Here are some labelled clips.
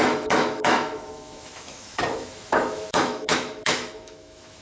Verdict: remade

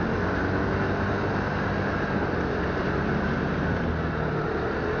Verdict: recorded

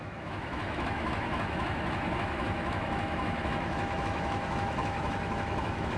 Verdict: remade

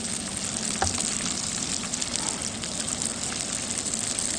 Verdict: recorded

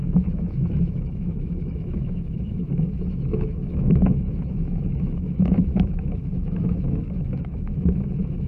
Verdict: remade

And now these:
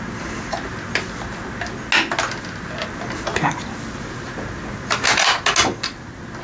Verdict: recorded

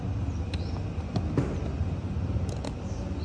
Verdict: recorded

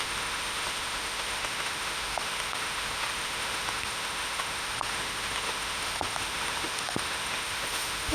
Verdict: remade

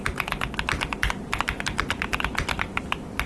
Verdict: recorded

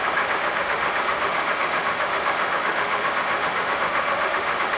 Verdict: remade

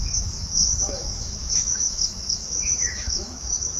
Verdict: remade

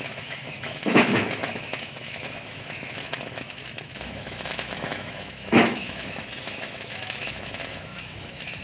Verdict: remade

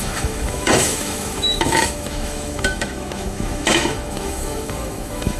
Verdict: remade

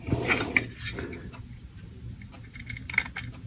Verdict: recorded